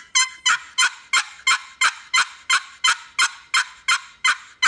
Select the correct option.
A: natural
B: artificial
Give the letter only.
A